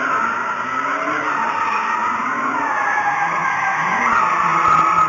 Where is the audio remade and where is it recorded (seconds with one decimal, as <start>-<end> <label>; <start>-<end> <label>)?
0.0-2.0 recorded; 2.0-4.0 remade; 4.0-5.1 recorded